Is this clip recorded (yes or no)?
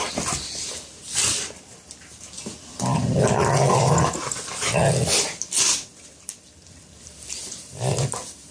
yes